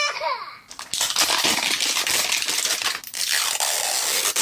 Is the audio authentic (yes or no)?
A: yes